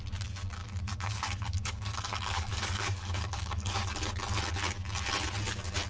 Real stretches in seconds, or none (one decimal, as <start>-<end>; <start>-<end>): 0.0-0.6; 4.1-5.9